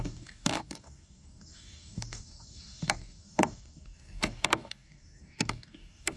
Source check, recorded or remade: remade